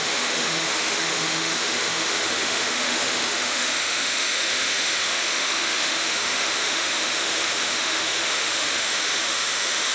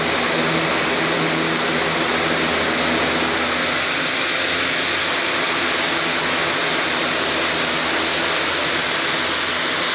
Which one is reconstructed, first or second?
first